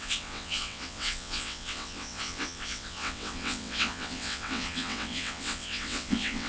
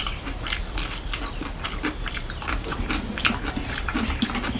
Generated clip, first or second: first